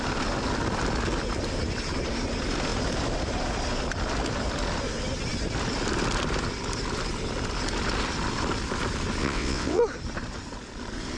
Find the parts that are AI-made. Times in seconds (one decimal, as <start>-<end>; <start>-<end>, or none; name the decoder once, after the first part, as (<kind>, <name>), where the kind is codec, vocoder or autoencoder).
9.2-9.8 (vocoder, WaveNeXt)